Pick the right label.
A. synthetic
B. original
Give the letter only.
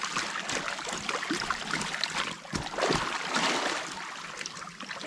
B